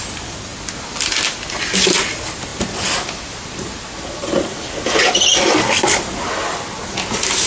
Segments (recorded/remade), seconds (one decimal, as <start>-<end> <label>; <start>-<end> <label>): 0.0-7.5 recorded